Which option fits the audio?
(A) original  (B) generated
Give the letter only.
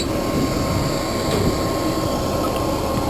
A